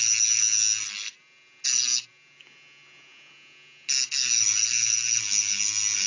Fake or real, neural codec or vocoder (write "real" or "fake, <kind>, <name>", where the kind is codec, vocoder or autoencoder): real